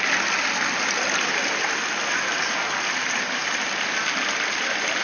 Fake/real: real